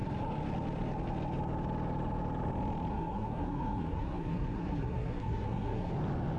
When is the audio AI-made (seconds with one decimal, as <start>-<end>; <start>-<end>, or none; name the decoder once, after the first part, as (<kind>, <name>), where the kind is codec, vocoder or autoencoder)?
2.9-5.9 (codec, SNAC)